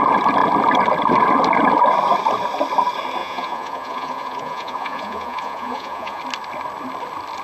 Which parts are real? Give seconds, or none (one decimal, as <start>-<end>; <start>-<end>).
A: 0.0-3.2; 6.2-7.4